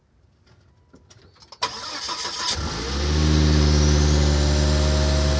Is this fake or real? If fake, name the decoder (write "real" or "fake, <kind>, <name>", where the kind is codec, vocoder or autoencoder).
real